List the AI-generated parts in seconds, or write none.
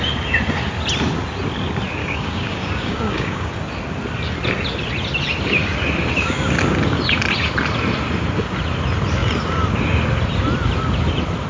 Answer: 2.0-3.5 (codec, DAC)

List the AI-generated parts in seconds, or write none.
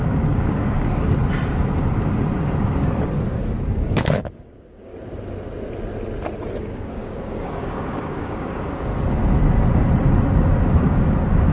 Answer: 0.0-1.2 (codec, DAC); 3.7-4.9; 6.6-8.9; 10.7-11.5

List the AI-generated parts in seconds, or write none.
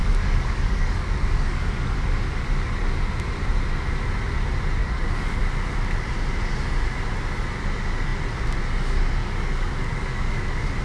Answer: 0.0-2.8 (codec, DAC); 4.8-5.4; 9.2-10.8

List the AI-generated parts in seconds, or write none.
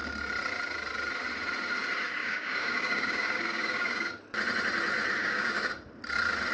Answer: 2.2-4.1 (codec, DAC); 5.2-5.7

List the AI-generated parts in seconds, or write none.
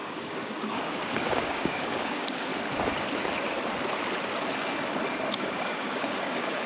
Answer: 0.0-2.5 (codec, DAC); 5.3-6.7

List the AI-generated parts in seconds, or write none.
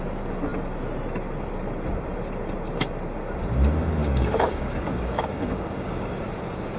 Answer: 4.0-6.2 (codec, DAC)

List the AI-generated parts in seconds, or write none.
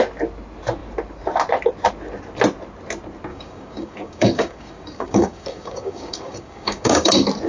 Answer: 3.3-7.1 (codec, DAC)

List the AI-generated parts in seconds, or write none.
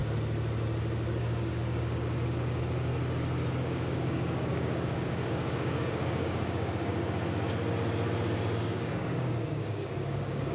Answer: 1.2-2.9 (codec, DAC); 3.6-6.9; 8.6-10.5